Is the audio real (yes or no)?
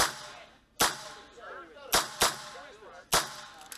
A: yes